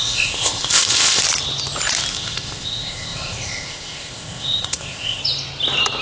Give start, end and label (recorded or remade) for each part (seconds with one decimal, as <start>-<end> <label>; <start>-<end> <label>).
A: 0.0-1.2 remade; 1.2-2.1 recorded; 2.1-5.2 remade; 5.2-6.0 recorded